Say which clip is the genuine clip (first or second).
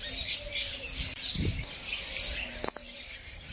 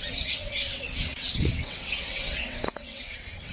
first